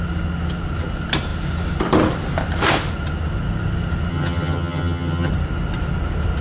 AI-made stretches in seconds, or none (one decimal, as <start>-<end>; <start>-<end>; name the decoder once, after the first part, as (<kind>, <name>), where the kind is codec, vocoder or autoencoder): 4.1-5.3 (vocoder, HiFi-GAN)